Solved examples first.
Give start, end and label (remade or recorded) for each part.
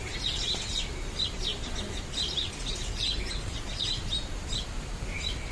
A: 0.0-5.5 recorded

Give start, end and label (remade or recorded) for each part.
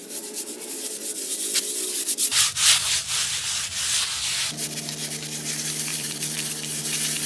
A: 0.0-0.9 remade; 0.9-5.9 recorded; 5.9-6.8 remade; 6.8-7.3 recorded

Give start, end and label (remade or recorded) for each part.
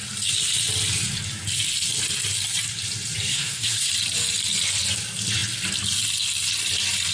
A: 0.0-3.3 recorded; 3.3-3.9 remade; 3.9-7.1 recorded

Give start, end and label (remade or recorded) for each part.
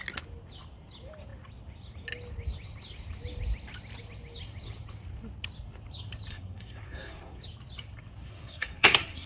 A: 0.0-6.3 recorded; 6.3-7.4 remade; 7.4-8.2 recorded; 8.2-9.3 remade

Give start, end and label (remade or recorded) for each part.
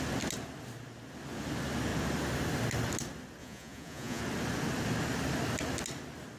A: 0.0-3.4 recorded; 3.4-4.2 remade; 4.2-6.4 recorded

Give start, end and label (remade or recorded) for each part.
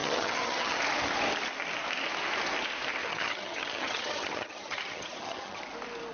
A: 0.0-0.8 remade; 0.8-3.0 recorded; 3.0-5.6 remade; 5.6-6.1 recorded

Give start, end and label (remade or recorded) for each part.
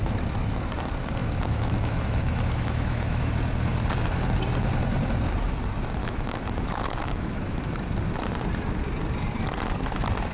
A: 0.0-1.2 recorded; 1.2-3.3 remade; 3.3-6.0 recorded; 6.0-7.7 remade; 7.7-10.3 recorded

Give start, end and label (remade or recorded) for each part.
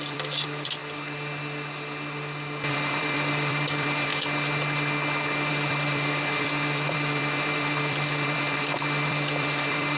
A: 0.0-0.8 remade; 0.8-2.7 recorded; 2.7-4.1 remade; 4.1-5.5 recorded; 5.5-10.0 remade